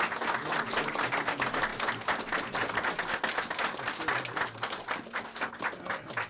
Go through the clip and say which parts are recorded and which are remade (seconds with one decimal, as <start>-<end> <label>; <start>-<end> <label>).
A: 0.0-6.3 recorded